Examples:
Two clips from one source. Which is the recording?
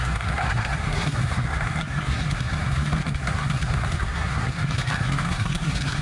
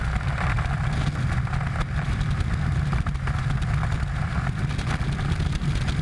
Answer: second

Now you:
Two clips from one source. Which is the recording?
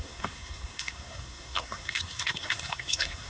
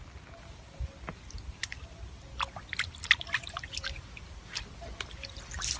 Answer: second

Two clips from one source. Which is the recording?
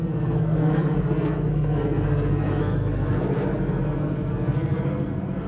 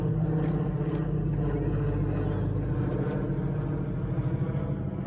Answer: second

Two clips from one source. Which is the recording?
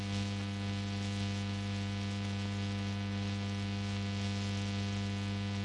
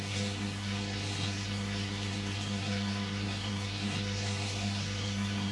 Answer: first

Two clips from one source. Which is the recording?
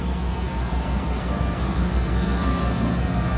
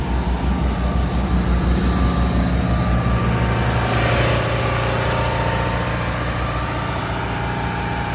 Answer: second